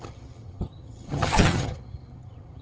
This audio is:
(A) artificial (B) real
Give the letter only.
A